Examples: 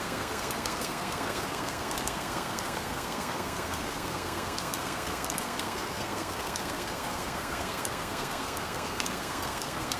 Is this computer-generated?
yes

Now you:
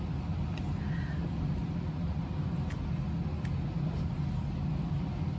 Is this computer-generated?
no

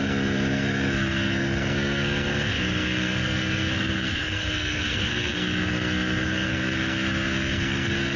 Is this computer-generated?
yes